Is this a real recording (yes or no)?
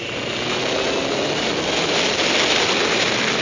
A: yes